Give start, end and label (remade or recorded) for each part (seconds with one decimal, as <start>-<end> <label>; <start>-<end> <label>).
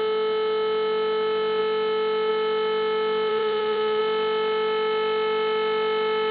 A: 0.0-3.3 recorded; 3.3-4.0 remade; 4.0-6.3 recorded